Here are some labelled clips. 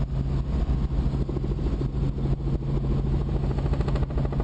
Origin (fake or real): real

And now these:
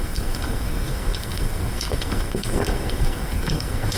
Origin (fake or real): fake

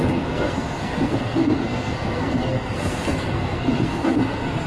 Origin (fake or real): fake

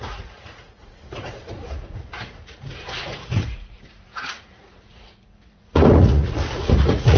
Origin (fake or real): fake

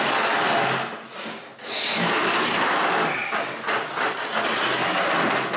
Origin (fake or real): real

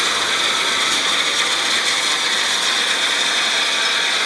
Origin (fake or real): real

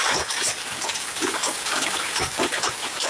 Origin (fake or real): fake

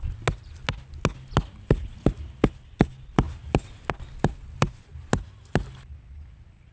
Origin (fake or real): real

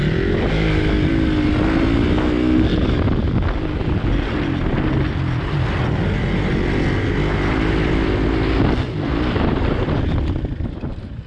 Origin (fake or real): real